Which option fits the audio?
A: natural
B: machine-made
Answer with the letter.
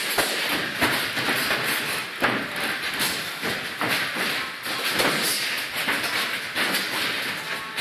A